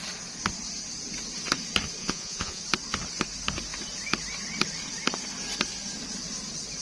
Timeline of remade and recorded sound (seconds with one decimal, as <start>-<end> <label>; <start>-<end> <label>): 0.0-2.0 recorded; 2.0-2.6 remade; 2.6-6.8 recorded

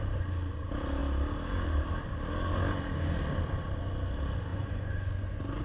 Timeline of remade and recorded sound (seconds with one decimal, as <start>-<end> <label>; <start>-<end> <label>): 0.0-4.5 recorded; 4.5-5.6 remade